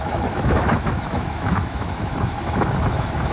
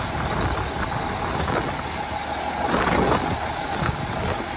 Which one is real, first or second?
second